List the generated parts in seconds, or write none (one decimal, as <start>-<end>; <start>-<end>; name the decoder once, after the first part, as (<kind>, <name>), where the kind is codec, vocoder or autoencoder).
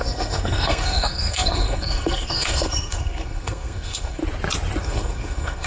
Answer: 0.0-4.2 (codec, SNAC); 4.8-5.7